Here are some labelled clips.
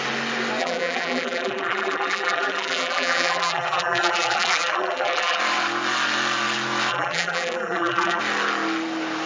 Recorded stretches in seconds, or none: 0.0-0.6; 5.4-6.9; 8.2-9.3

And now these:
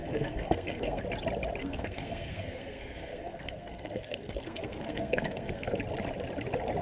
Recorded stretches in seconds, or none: 1.0-1.6; 5.7-6.8

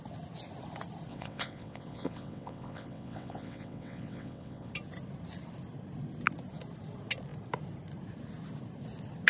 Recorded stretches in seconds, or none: 0.0-1.1; 4.7-9.3

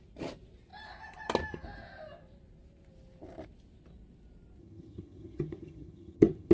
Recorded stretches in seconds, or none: 0.0-4.6